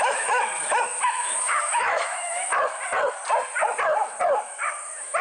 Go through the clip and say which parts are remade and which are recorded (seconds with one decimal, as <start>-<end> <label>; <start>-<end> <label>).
0.0-2.5 remade; 2.5-4.4 recorded; 4.4-5.2 remade